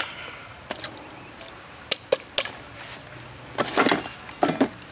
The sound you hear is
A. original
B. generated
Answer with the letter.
A